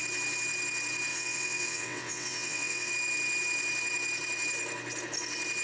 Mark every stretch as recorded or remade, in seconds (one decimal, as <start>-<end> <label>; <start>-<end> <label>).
0.0-1.1 recorded; 1.1-2.9 remade; 2.9-5.6 recorded